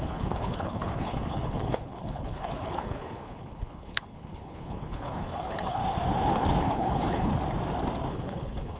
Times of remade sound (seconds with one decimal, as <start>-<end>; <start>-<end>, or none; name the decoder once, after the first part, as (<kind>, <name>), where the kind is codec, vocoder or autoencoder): 0.0-5.8 (codec, HILCodec); 6.6-7.3; 8.1-8.8